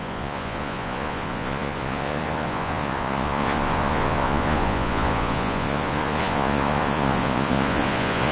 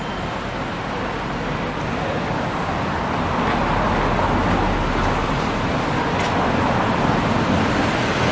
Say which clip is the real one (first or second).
second